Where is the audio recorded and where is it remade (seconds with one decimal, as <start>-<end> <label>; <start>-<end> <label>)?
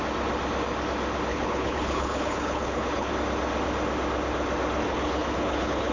0.0-1.3 recorded; 1.3-3.1 remade; 3.1-4.8 recorded; 4.8-5.9 remade